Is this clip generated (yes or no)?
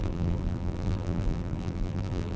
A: yes